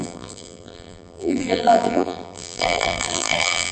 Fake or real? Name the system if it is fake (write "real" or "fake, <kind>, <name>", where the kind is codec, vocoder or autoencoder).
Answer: fake, vocoder, BigVGAN v2